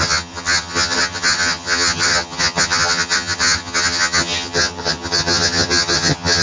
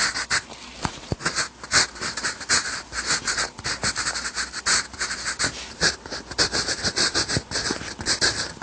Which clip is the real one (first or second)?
second